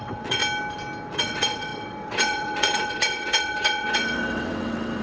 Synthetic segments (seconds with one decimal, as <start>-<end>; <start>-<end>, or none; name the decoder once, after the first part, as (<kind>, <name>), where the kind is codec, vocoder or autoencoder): 0.0-0.4 (vocoder, WaveNeXt); 1.1-5.0